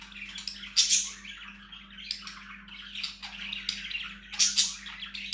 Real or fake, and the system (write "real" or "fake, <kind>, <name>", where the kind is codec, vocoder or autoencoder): real